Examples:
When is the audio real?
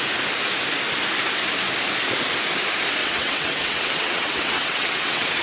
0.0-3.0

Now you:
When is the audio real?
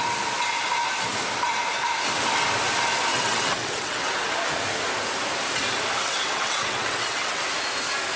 0.0-3.1; 4.1-6.0; 7.4-8.2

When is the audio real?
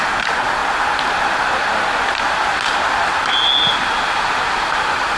0.0-5.2